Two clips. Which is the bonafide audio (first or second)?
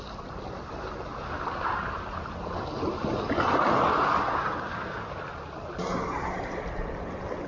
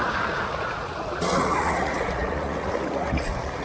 first